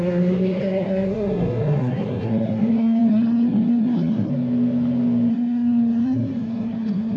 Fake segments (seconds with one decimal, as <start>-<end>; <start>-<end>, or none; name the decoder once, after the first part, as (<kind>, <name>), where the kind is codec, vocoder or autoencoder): 0.0-4.3 (codec, SNAC); 5.3-7.2